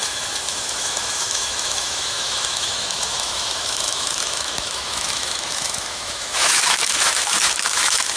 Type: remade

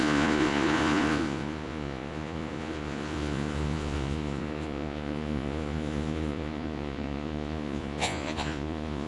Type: remade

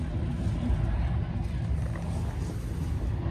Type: recorded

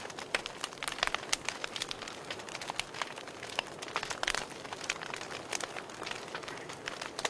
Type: recorded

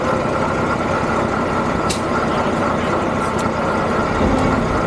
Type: remade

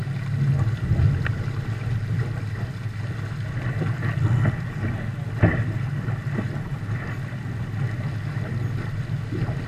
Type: recorded